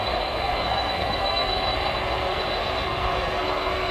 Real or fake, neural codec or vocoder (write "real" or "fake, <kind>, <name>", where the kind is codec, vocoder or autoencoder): fake, codec, SNAC